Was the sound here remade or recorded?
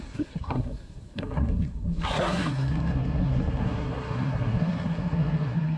remade